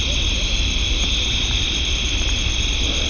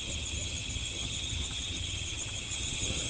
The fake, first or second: second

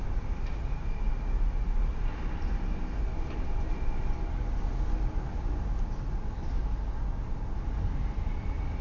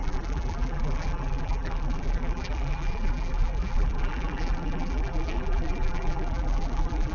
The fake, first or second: second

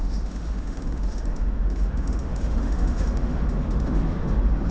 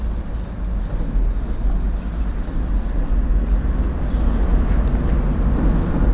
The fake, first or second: first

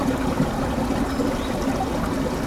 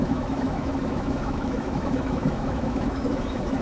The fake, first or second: second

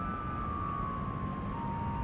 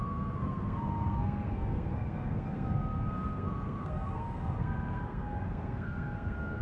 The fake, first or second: second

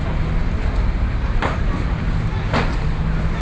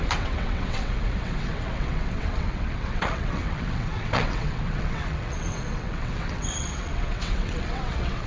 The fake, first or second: second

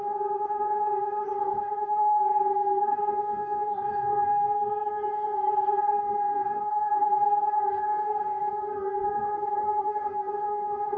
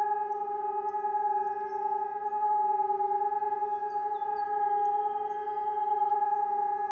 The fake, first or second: first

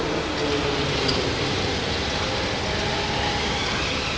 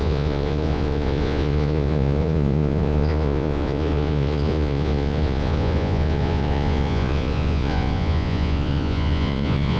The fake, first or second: second